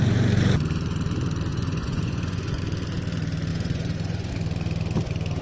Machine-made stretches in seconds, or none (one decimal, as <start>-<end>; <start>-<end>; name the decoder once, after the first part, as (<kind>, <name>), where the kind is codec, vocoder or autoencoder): 1.5-2.6 (vocoder, Vocos); 3.5-4.3